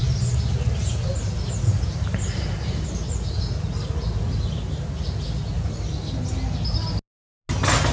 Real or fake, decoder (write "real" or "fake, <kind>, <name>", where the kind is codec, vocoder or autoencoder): real